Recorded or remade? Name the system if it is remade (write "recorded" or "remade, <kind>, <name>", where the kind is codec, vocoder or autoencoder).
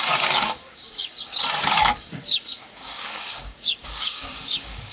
remade, codec, DAC